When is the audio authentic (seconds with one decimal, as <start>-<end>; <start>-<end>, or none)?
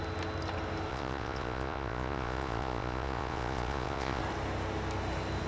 0.0-0.9; 4.2-5.5